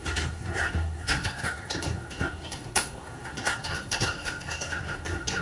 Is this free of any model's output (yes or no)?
no